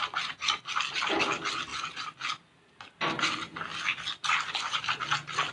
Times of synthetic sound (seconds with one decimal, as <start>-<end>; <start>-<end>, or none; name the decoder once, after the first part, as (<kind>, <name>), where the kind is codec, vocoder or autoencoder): none